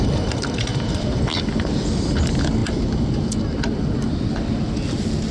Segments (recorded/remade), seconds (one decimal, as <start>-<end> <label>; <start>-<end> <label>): 0.0-0.7 recorded; 0.7-1.2 remade; 1.2-5.3 recorded